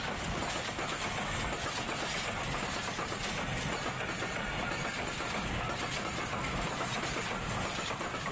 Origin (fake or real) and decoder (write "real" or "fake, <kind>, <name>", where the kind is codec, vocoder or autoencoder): real